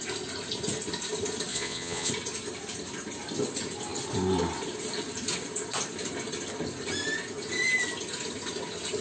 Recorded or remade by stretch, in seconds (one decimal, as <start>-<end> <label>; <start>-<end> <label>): 0.0-1.5 recorded; 1.5-2.1 remade; 2.1-9.0 recorded